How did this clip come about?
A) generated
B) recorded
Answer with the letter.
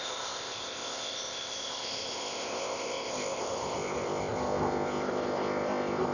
A